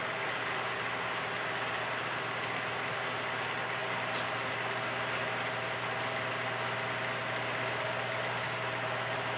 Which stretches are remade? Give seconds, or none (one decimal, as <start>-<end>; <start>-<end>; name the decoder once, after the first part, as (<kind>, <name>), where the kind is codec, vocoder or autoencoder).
none